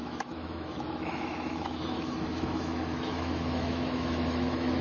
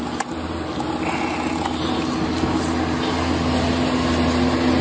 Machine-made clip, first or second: first